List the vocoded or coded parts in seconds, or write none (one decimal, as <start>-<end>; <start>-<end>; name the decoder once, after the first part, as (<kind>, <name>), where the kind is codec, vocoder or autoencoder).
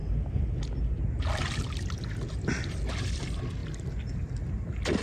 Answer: 3.0-3.6 (vocoder, BigVGAN v2); 4.4-5.0